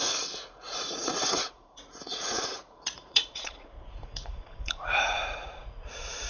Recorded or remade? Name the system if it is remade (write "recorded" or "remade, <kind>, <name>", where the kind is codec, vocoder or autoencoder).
remade, vocoder, Vocos